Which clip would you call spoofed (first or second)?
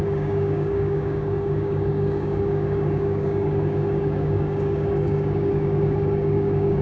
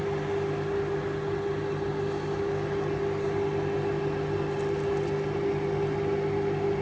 first